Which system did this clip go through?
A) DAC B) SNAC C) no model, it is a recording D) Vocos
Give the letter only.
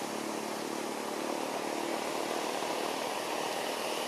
C